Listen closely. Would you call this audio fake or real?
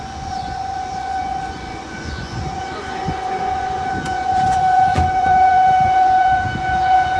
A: fake